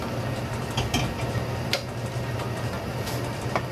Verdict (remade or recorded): recorded